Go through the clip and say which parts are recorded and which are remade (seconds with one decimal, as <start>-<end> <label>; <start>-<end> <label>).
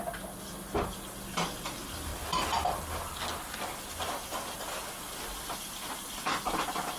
0.0-7.0 recorded